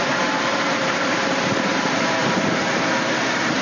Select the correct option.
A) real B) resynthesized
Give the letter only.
B